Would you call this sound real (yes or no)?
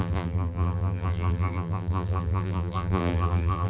no